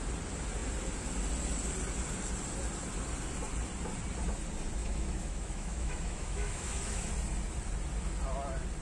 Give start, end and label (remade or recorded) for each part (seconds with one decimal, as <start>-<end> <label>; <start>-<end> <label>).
0.0-4.8 recorded; 4.8-7.1 remade; 7.1-8.8 recorded